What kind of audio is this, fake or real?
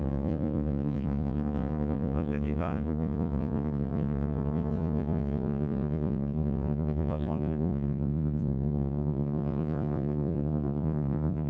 fake